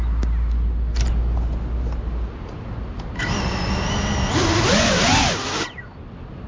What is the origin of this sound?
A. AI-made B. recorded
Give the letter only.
B